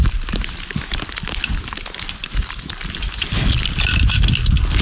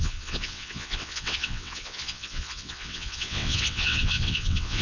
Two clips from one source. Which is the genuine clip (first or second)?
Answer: first